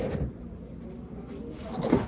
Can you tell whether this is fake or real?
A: real